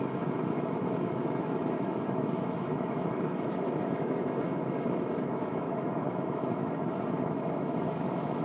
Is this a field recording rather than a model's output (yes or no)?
no